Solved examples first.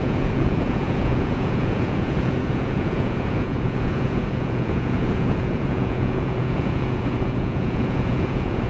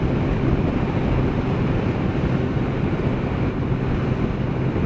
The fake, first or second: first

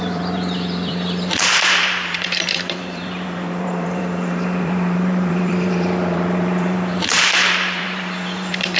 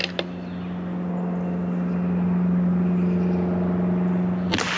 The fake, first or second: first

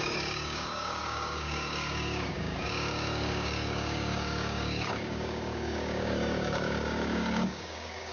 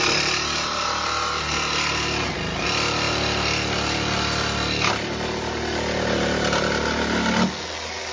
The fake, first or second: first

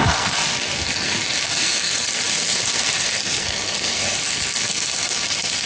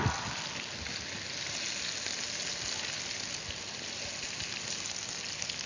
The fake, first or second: first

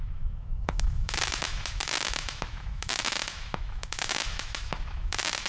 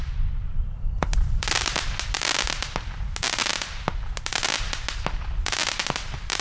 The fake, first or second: first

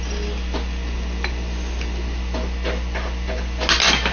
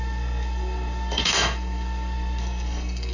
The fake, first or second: second